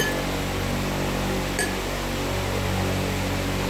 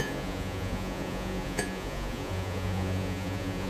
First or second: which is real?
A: first